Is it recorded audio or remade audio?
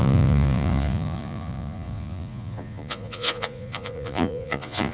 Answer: remade